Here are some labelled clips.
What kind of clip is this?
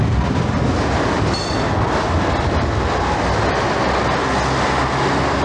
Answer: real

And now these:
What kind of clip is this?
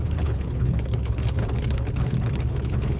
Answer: fake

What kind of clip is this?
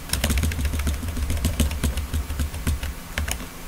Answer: fake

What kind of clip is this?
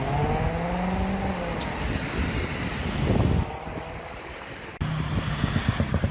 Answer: real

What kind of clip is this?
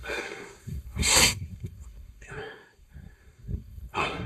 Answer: fake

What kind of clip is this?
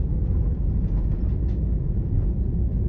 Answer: fake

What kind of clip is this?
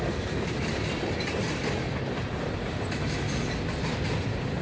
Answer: real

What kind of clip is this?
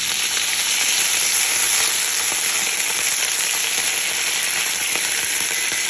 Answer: real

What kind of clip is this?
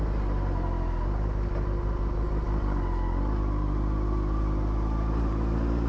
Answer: real